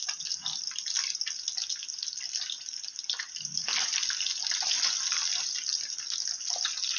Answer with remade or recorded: recorded